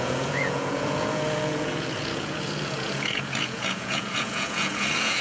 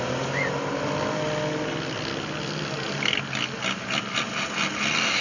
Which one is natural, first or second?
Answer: second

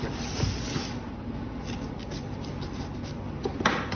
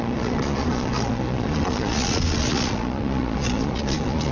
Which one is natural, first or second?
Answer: first